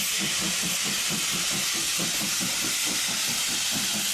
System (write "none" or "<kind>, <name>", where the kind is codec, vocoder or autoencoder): none